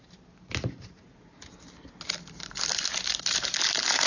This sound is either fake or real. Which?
real